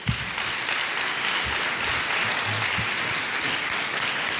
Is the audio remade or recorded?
recorded